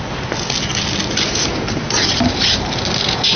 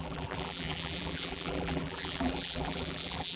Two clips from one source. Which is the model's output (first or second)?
second